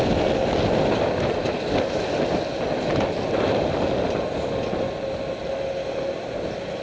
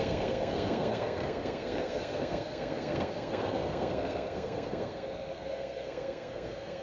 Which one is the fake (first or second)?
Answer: second